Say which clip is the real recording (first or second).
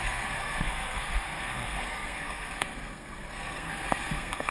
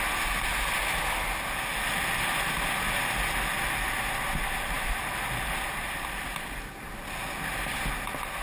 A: second